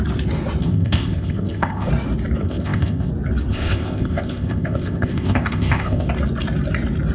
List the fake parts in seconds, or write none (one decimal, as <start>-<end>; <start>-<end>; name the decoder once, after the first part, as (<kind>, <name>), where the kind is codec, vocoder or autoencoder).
0.6-1.9 (codec, ZipCodec); 2.4-3.1; 3.5-6.1